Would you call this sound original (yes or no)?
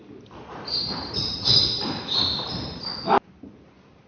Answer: yes